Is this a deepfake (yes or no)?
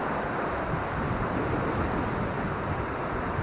no